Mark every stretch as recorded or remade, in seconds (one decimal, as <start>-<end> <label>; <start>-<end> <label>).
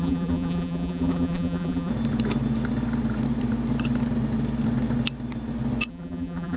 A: 0.0-1.9 remade; 1.9-5.9 recorded; 5.9-6.6 remade